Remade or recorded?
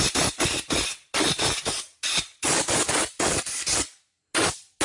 recorded